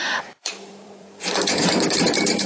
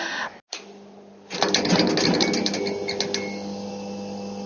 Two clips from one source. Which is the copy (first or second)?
first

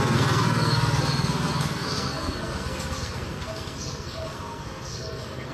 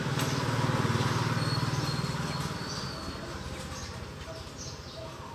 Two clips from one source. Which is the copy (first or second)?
first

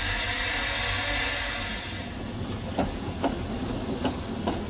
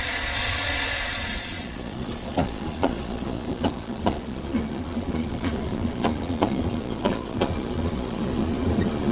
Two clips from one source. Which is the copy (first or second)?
second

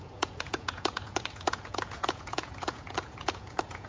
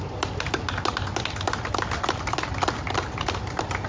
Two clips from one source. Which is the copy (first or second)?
first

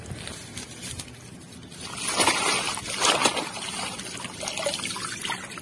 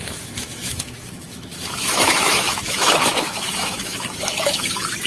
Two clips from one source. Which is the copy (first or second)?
second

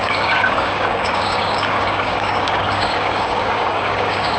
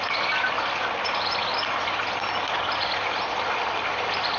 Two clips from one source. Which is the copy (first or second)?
first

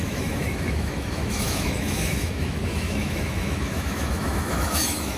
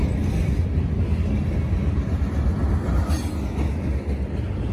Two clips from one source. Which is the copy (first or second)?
first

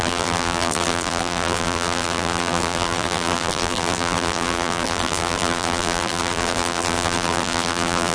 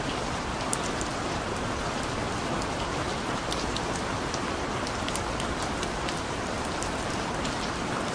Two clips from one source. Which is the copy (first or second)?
first